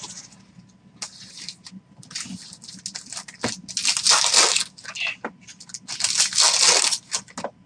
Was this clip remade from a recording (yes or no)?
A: no